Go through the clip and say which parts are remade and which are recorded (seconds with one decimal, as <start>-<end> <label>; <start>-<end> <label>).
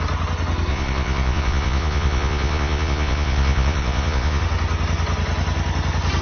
0.0-0.7 recorded; 0.7-4.4 remade; 4.4-6.2 recorded